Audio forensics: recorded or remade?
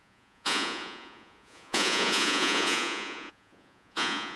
remade